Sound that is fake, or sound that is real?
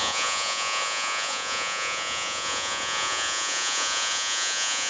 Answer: fake